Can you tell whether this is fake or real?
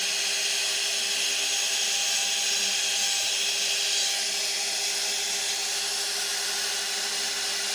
real